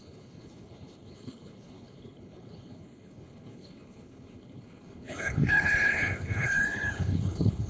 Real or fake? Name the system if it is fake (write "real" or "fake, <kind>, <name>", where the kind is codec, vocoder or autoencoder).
fake, codec, HILCodec